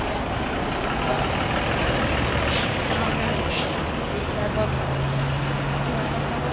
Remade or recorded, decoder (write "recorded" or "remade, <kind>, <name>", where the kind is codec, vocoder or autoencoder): recorded